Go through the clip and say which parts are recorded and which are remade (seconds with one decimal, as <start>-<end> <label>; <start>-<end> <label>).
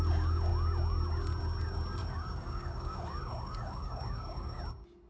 0.0-2.0 recorded; 2.0-4.6 remade; 4.6-5.1 recorded